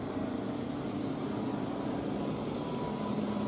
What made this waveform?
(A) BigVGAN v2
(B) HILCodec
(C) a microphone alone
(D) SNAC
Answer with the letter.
C